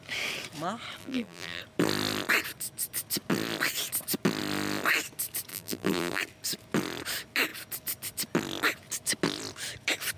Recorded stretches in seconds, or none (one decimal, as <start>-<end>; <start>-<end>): 0.0-1.0; 1.6-5.5; 6.2-10.2